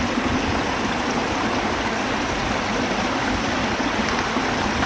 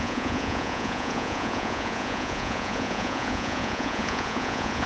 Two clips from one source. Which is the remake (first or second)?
second